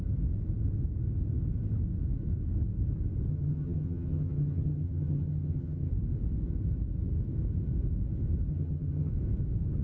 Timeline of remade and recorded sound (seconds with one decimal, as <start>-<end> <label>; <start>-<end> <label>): 0.0-3.3 recorded; 3.3-5.9 remade; 5.9-8.5 recorded; 8.5-9.1 remade; 9.1-9.8 recorded